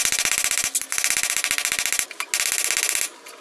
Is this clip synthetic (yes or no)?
no